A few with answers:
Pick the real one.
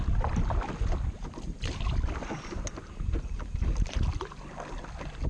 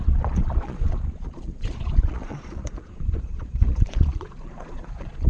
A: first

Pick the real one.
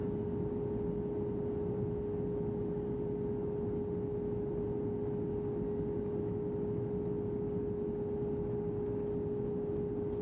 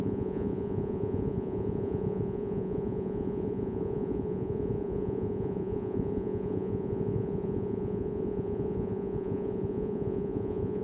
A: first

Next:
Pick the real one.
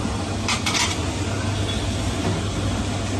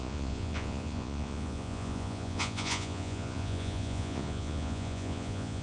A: first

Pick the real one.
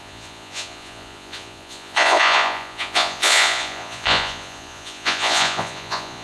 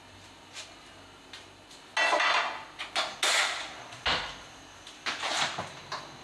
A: second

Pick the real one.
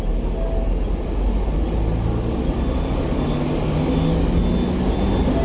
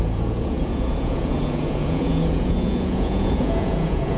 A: first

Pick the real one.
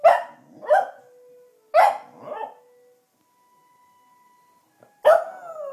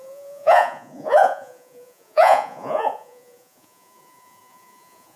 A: first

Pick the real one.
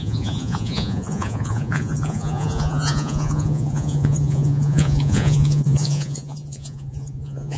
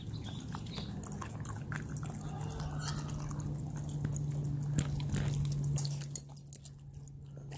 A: second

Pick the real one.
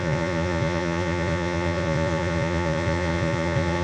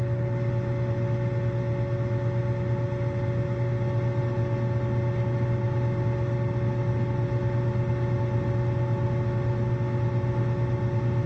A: second